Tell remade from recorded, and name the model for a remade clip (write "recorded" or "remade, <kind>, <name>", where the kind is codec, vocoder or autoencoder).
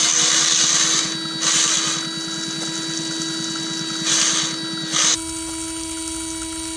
recorded